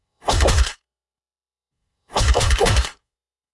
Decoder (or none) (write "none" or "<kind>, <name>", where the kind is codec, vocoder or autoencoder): codec, SNAC